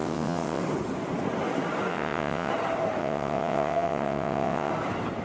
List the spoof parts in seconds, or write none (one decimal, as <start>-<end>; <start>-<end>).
0.0-0.6; 1.9-2.5; 3.0-4.7